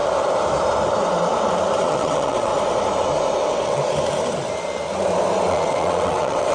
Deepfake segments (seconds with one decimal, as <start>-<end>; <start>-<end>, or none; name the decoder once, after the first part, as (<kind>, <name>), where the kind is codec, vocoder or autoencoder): 1.8-2.5 (vocoder, WaveNeXt); 3.4-3.8; 5.5-6.5